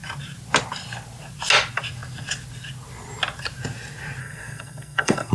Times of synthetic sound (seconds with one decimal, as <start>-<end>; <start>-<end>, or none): 4.2-5.3